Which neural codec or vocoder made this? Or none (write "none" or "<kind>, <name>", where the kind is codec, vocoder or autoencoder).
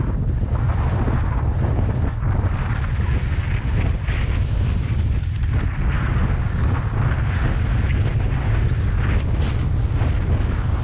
none